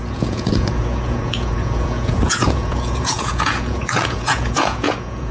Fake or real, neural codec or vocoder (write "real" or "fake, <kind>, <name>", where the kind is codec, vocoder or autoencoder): fake, vocoder, Vocos